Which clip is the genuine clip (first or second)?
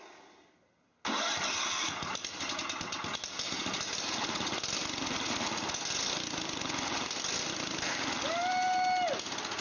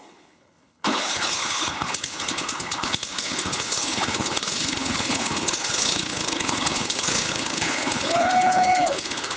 first